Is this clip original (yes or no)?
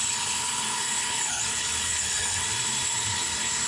no